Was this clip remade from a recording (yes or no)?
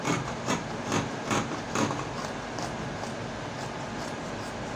no